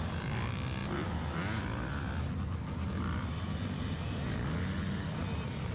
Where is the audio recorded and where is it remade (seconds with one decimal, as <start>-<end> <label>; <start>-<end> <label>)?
0.0-5.7 recorded